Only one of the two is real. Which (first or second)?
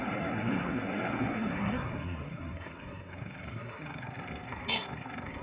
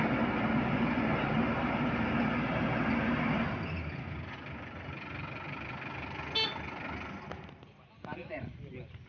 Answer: second